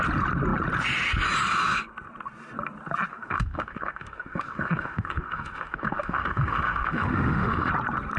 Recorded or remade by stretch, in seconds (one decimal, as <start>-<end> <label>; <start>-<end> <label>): 0.0-3.1 recorded; 3.1-7.7 remade; 7.7-8.2 recorded